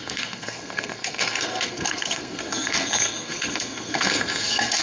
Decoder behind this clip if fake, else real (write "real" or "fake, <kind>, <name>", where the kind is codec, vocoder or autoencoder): fake, codec, SNAC